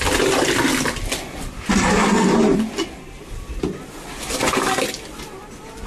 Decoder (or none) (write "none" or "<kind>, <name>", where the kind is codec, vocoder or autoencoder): none